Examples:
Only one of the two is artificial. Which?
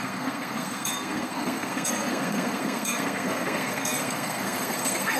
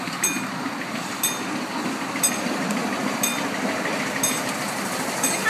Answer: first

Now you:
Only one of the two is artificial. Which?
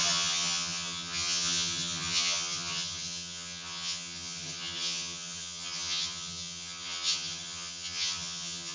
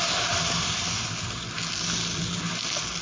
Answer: first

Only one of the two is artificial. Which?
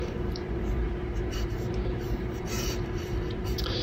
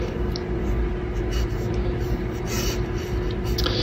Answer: first